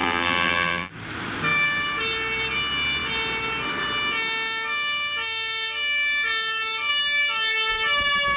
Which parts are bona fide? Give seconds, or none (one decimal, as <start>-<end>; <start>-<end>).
0.9-8.4